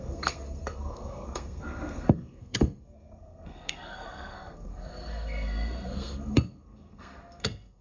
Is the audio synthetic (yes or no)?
yes